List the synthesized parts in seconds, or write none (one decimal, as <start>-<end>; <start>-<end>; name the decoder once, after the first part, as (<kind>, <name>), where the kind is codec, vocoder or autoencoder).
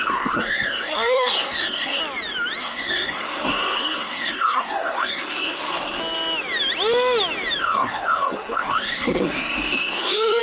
0.0-2.0 (codec, SNAC); 2.6-6.0; 7.6-10.4